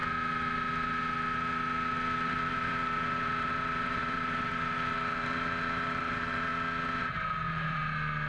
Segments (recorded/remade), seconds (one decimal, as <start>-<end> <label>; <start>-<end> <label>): 0.0-2.5 recorded; 2.5-6.5 remade; 6.5-7.0 recorded; 7.0-7.8 remade; 7.8-8.3 recorded